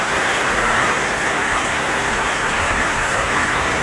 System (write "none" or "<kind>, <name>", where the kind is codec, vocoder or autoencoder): codec, SNAC